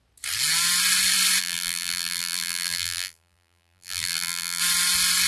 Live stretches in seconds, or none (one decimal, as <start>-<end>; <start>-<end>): 0.0-1.4; 4.6-5.3